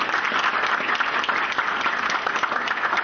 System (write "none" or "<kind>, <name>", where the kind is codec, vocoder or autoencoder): none